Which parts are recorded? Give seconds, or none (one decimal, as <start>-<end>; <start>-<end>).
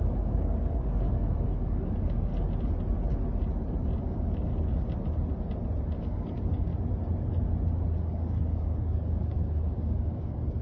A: 2.3-4.0; 4.5-6.0; 6.7-8.0